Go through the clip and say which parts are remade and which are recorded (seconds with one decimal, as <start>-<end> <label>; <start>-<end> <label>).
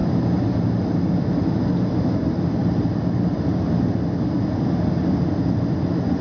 0.0-6.2 recorded